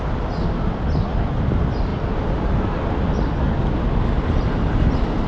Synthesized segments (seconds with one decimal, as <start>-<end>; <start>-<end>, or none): none